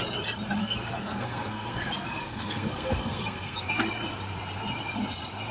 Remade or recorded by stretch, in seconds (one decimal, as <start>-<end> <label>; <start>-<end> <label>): 0.0-0.6 recorded; 0.6-3.8 remade; 3.8-5.5 recorded